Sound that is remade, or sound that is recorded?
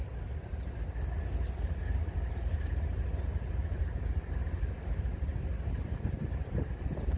recorded